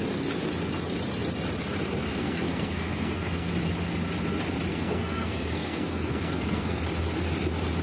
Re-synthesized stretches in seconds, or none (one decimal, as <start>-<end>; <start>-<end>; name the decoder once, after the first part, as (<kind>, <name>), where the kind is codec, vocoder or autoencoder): 2.1-3.5 (codec, SNAC); 4.7-6.8